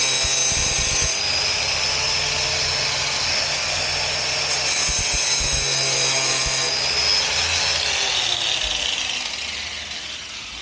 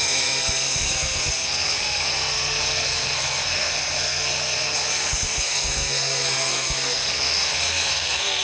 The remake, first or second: second